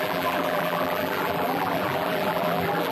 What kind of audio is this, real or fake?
fake